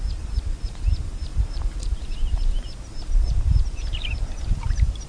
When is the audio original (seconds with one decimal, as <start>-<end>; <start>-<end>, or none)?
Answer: none